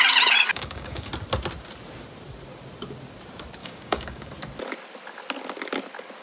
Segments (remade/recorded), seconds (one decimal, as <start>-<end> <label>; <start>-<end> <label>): 0.0-0.5 recorded; 0.5-1.1 remade; 1.1-3.6 recorded; 3.6-4.3 remade; 4.3-6.2 recorded